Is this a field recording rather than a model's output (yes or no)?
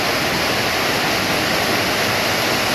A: yes